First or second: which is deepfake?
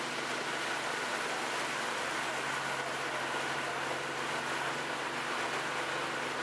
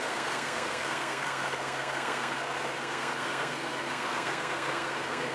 second